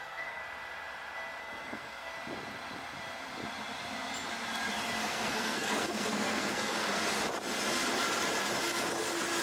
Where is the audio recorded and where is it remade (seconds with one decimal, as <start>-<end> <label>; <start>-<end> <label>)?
0.0-0.4 remade; 0.4-1.4 recorded; 1.4-2.1 remade; 2.1-5.0 recorded; 5.0-7.0 remade; 7.0-9.4 recorded